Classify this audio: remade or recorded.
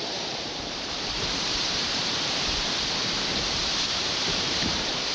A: remade